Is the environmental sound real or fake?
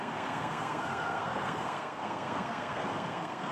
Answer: fake